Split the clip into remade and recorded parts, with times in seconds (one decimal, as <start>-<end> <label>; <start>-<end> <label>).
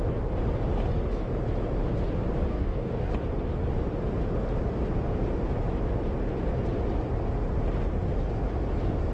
0.0-2.5 recorded; 2.5-3.1 remade; 3.1-9.1 recorded